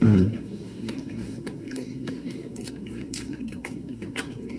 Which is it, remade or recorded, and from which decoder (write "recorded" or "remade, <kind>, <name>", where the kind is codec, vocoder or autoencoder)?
remade, codec, SNAC